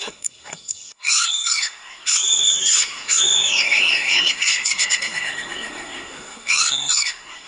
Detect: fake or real fake